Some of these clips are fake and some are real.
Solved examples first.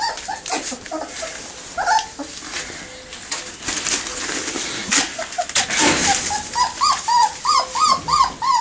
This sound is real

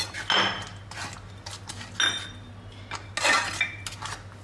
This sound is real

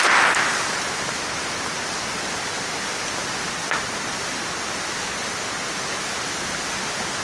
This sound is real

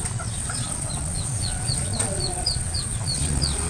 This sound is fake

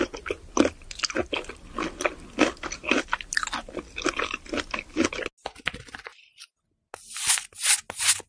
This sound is real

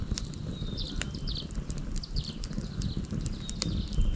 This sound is real